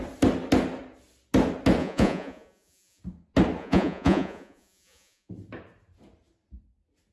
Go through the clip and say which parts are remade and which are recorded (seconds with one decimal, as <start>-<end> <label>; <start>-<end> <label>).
0.0-1.8 recorded; 1.8-3.0 remade; 3.0-3.6 recorded; 3.6-5.3 remade; 5.3-7.1 recorded